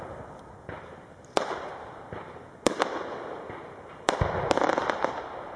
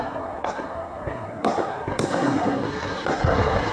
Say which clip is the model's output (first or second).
second